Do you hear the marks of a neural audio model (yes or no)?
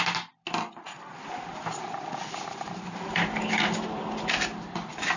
no